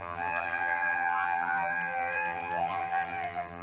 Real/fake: fake